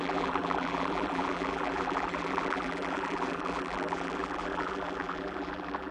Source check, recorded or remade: remade